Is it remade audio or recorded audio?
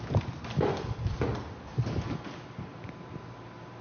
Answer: recorded